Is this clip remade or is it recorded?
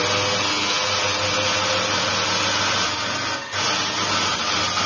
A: recorded